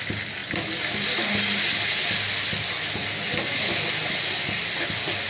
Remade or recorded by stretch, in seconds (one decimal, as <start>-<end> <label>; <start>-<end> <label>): 0.0-5.3 recorded

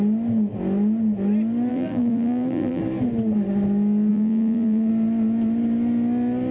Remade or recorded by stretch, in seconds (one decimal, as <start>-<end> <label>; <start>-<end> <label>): 0.0-1.7 recorded; 1.7-2.8 remade; 2.8-4.1 recorded; 4.1-4.9 remade; 4.9-6.5 recorded

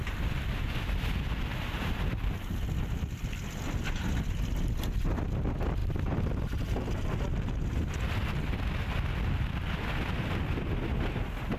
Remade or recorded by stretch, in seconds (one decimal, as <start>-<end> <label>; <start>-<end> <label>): 0.0-11.6 recorded

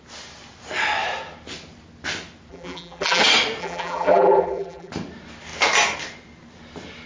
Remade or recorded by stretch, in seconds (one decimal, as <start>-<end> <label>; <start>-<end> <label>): 0.0-2.5 recorded; 2.5-3.2 remade; 3.2-3.6 recorded; 3.6-4.9 remade; 4.9-7.1 recorded

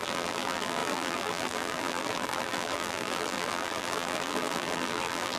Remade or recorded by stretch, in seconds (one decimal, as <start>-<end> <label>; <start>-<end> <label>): 0.0-5.4 remade